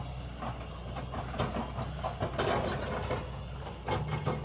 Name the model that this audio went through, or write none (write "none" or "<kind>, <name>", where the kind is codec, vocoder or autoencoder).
none